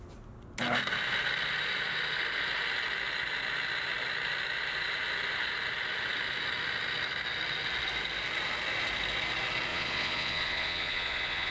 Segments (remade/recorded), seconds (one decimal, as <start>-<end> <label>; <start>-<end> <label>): 0.0-9.7 recorded; 9.7-11.5 remade